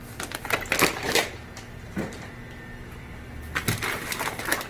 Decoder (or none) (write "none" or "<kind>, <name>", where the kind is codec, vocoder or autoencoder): none